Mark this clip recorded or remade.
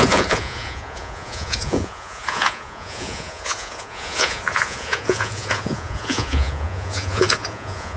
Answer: remade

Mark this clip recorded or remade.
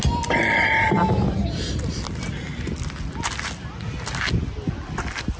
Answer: recorded